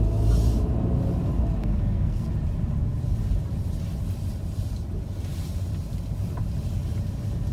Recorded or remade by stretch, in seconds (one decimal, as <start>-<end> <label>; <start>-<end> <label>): 0.0-1.6 recorded; 1.6-2.3 remade; 2.3-7.5 recorded